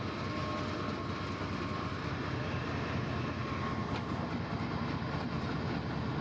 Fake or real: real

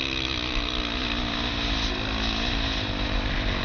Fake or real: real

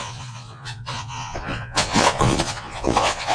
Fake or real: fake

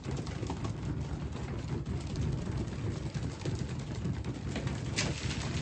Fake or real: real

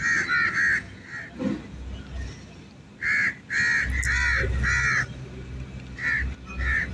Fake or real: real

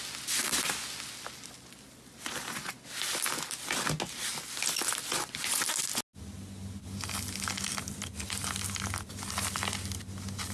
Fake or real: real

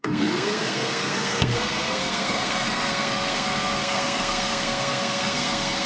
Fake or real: fake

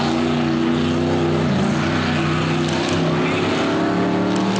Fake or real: real